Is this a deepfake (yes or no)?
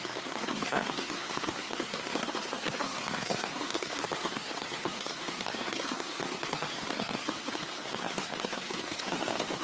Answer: yes